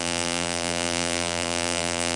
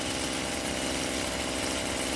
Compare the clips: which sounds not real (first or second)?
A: first